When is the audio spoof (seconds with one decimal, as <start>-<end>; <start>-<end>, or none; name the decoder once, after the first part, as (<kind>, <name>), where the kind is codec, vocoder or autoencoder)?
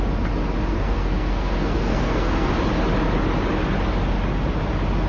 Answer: 0.7-2.5 (codec, SNAC)